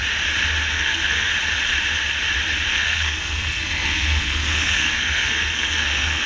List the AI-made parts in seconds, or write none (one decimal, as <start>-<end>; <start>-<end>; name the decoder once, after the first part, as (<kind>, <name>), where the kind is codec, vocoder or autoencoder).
0.7-1.3 (codec, SNAC); 2.7-6.3